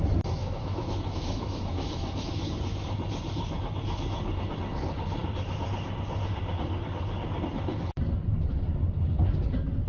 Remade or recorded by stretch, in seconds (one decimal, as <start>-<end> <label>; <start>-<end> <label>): 0.0-0.4 recorded; 0.4-2.4 remade; 2.4-9.9 recorded